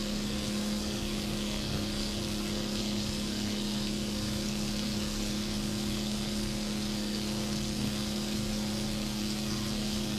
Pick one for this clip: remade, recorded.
remade